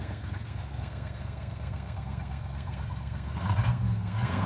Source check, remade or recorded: remade